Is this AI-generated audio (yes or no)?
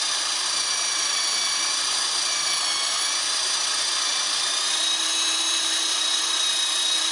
no